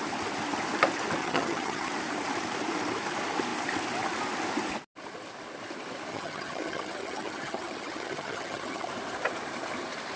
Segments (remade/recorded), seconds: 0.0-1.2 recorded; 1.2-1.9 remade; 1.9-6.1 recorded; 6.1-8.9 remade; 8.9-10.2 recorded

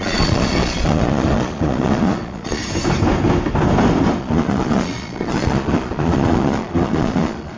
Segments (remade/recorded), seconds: 0.0-2.6 remade; 2.6-4.2 recorded; 4.2-7.6 remade

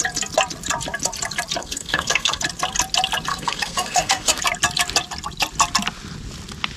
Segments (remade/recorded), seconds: 0.0-1.6 recorded; 1.6-2.4 remade; 2.4-3.3 recorded; 3.3-4.4 remade; 4.4-6.8 recorded